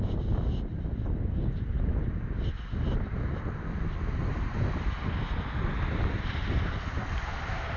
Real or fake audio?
real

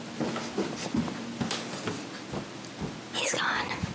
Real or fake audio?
real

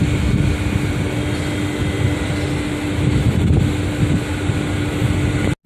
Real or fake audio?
real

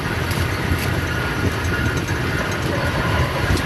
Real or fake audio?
real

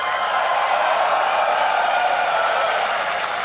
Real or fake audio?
fake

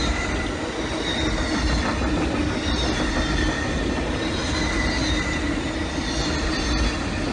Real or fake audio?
real